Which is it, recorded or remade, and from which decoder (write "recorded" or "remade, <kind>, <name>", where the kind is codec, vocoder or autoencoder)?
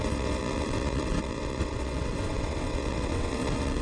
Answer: remade, vocoder, WaveNeXt